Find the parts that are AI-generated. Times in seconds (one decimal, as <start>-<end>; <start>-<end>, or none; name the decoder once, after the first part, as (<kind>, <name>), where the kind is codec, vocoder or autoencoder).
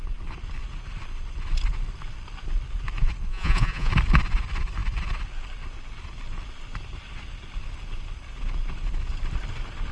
3.3-3.9 (vocoder, Vocos)